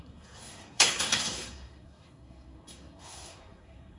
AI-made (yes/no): yes